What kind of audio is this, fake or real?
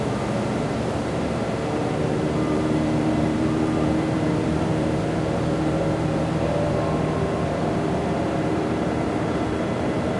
fake